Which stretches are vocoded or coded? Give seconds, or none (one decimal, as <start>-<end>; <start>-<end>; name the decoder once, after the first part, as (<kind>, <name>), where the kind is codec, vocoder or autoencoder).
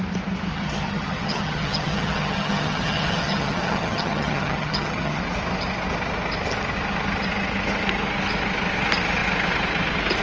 0.5-5.2 (vocoder, HiFi-GAN)